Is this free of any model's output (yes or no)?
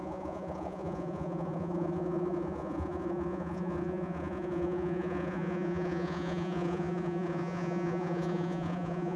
no